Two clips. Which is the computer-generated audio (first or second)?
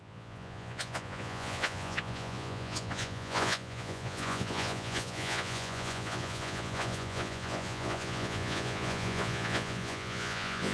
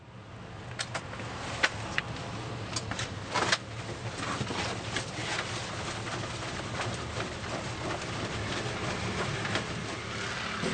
first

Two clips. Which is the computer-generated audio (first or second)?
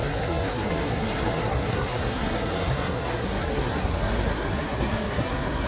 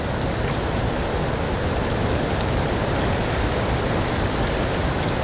first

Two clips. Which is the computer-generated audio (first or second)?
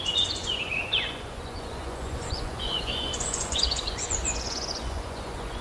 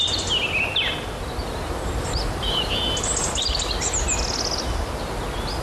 first